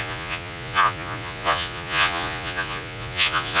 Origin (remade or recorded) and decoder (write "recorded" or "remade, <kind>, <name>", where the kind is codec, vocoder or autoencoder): remade, vocoder, Vocos